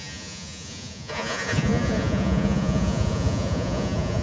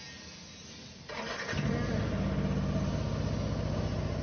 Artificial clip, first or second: first